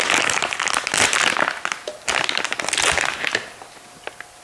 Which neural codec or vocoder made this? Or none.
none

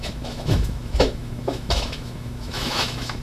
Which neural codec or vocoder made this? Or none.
autoencoder, DAC-VAE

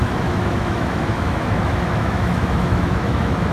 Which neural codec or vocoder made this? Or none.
autoencoder, DAC-VAE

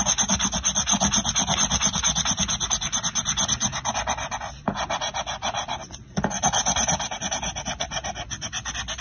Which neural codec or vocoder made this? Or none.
none